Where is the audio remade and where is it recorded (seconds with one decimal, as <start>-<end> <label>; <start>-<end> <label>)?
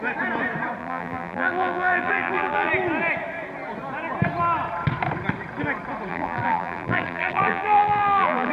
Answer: 0.0-0.8 recorded; 0.8-2.7 remade; 2.7-6.1 recorded; 6.1-8.5 remade